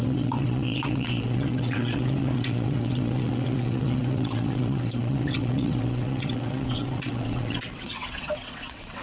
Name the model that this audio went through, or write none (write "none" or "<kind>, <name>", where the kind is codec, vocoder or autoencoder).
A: vocoder, WaveNeXt